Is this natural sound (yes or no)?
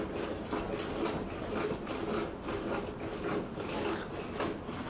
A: yes